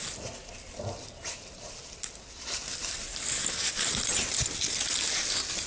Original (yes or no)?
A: yes